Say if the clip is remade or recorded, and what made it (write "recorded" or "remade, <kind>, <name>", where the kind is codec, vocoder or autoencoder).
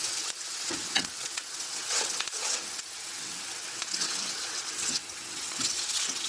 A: remade, vocoder, WaveNeXt